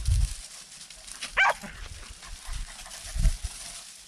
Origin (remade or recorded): recorded